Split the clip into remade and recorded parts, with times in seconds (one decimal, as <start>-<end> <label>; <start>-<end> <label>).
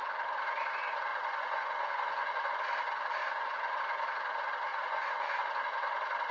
0.0-1.1 recorded; 1.1-2.5 remade; 2.5-3.2 recorded; 3.2-3.8 remade; 3.8-4.7 recorded; 4.7-5.4 remade; 5.4-6.3 recorded